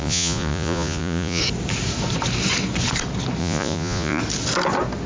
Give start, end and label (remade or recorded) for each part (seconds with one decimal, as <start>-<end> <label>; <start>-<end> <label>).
0.0-1.4 remade; 1.4-3.4 recorded; 3.4-4.2 remade; 4.2-5.1 recorded